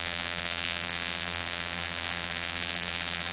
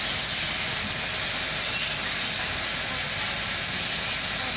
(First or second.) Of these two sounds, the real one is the second